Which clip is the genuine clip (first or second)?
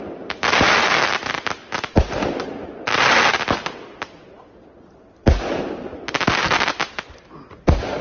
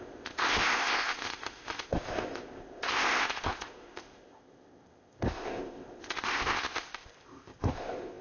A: first